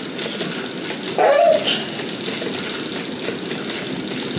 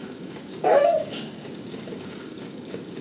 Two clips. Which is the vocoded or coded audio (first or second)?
second